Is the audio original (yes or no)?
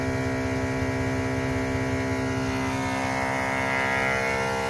yes